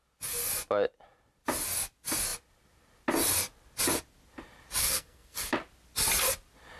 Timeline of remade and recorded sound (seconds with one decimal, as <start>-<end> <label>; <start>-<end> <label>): 0.0-4.8 recorded; 4.8-5.5 remade; 5.5-6.8 recorded

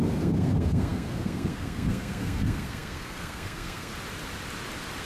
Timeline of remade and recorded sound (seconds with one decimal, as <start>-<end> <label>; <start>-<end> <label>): 0.0-3.9 remade; 3.9-5.0 recorded

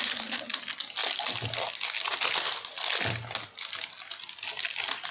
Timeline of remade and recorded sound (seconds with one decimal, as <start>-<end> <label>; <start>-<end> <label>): 0.0-5.1 recorded

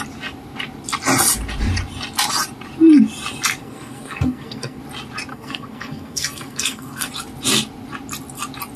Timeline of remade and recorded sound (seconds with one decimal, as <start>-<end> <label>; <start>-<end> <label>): 0.0-3.6 recorded; 3.6-4.8 remade; 4.8-5.3 recorded; 5.3-7.1 remade; 7.1-8.8 recorded

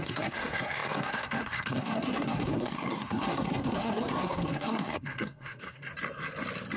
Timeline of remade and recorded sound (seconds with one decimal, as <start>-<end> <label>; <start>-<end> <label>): 0.0-5.9 remade; 5.9-6.8 recorded